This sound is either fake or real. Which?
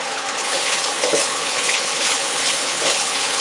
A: fake